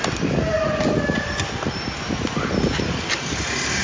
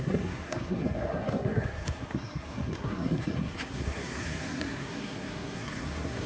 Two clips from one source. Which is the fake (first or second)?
second